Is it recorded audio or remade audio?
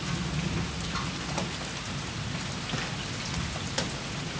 recorded